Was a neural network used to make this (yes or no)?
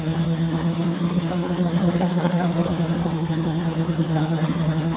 yes